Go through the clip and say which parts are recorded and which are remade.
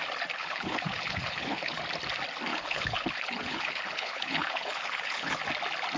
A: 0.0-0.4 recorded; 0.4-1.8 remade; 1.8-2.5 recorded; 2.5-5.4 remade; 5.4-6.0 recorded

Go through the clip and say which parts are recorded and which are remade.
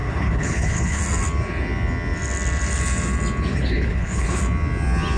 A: 0.0-1.0 remade; 1.0-3.5 recorded; 3.5-4.4 remade; 4.4-5.2 recorded